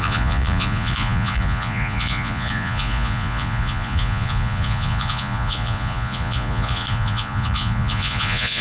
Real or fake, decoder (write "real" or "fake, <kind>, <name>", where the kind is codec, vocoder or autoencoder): fake, vocoder, Vocos